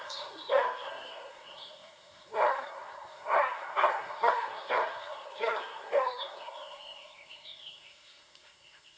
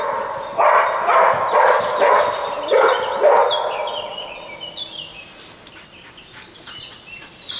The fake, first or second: first